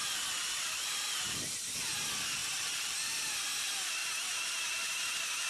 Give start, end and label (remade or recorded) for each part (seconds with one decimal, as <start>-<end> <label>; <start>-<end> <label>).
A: 0.0-1.8 remade; 1.8-2.4 recorded; 2.4-3.5 remade; 3.5-5.5 recorded